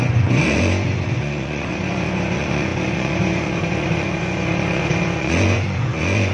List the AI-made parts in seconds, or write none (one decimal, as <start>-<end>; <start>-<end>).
0.0-6.3